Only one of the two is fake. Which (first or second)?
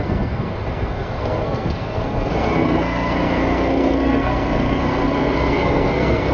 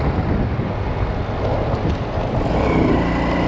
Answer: first